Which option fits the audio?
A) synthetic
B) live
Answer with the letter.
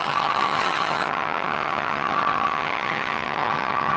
A